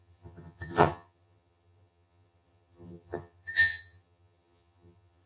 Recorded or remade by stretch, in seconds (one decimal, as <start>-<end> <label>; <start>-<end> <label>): 0.0-5.3 remade